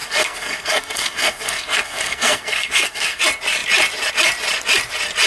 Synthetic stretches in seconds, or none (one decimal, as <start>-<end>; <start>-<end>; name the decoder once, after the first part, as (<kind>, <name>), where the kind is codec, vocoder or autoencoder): 0.0-3.2 (codec, SNAC)